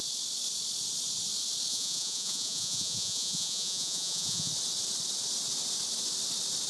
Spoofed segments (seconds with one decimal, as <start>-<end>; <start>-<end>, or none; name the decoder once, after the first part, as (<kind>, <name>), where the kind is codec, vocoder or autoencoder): 1.7-4.5 (vocoder, Vocos)

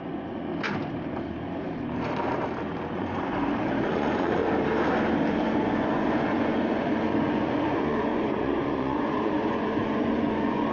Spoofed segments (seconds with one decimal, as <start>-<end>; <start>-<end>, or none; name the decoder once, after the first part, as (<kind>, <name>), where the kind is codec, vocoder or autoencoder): 0.0-0.5 (vocoder, Vocos); 2.9-3.4; 3.9-4.4; 5.3-10.7

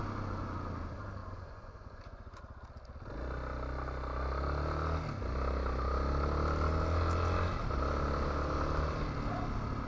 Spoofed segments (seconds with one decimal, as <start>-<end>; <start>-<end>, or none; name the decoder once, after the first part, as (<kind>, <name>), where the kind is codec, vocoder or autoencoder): 1.2-2.4 (vocoder, Vocos)

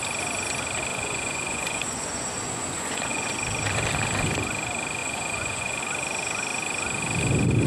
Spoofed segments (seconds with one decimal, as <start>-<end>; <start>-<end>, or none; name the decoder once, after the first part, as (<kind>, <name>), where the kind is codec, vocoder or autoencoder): 0.9-3.3 (vocoder, Vocos); 5.0-5.8

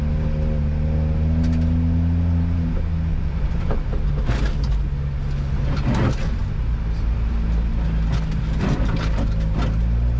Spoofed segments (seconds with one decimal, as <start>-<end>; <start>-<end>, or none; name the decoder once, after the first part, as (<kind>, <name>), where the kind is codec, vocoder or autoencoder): 3.1-3.8 (vocoder, Vocos)

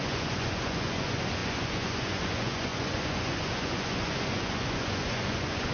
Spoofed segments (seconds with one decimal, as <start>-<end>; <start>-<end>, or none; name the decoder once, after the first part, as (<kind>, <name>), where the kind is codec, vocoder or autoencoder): 0.0-5.7 (vocoder, Vocos)